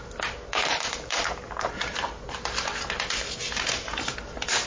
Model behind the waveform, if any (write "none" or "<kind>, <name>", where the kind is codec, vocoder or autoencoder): none